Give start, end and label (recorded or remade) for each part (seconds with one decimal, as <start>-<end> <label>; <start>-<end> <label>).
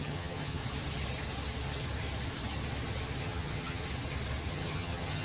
0.0-0.6 remade; 0.6-3.2 recorded; 3.2-3.8 remade; 3.8-4.5 recorded; 4.5-5.2 remade